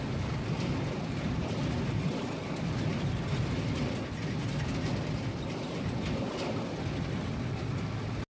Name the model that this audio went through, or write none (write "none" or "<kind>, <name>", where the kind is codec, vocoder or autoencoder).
none